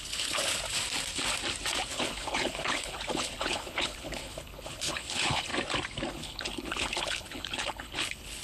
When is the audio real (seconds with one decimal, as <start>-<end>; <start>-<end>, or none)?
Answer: 0.4-1.9; 5.5-6.1